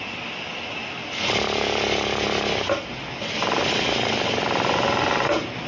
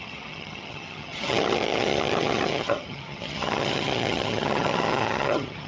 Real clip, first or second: first